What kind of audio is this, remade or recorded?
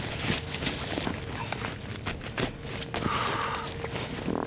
recorded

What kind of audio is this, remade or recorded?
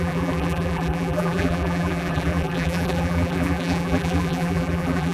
remade